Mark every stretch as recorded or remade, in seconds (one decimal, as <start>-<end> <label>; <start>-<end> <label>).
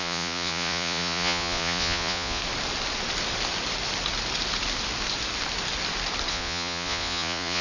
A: 0.0-2.4 remade; 2.4-6.3 recorded; 6.3-7.6 remade